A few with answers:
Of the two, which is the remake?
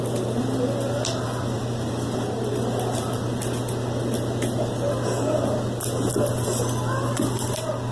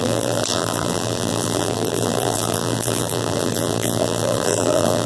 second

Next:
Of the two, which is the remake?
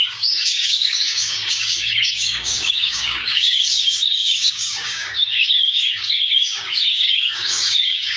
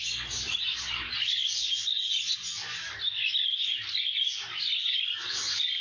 first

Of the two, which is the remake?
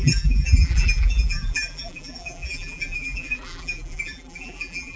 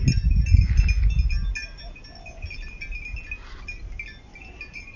first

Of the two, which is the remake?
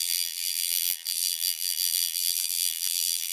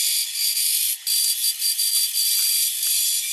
first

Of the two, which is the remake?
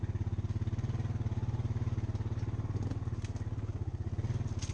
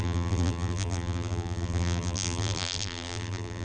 second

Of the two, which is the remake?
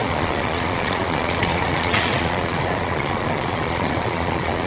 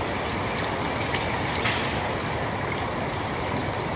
first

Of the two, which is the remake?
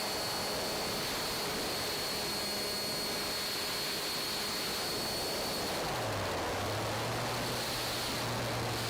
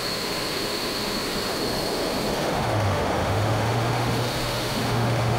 second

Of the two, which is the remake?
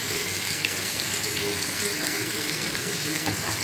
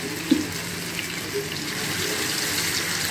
first